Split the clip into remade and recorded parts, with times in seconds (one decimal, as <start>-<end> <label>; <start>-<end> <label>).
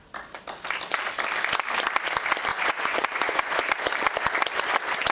0.0-2.5 recorded; 2.5-3.7 remade; 3.7-5.1 recorded